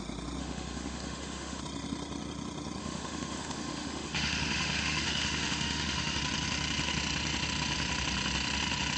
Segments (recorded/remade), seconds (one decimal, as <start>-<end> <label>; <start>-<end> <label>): 0.0-0.4 recorded; 0.4-1.6 remade; 1.6-2.8 recorded; 2.8-6.2 remade; 6.2-9.0 recorded